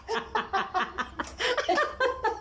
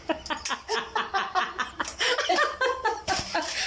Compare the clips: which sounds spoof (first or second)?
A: second